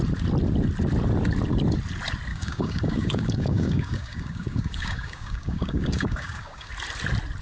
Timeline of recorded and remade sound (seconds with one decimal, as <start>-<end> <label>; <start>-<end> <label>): 0.0-2.3 recorded; 2.3-6.7 remade; 6.7-7.4 recorded